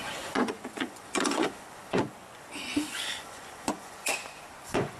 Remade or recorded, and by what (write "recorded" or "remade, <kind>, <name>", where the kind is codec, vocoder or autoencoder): remade, vocoder, Vocos